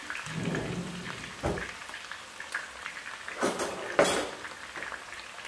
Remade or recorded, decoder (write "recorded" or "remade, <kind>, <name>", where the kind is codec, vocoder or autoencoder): recorded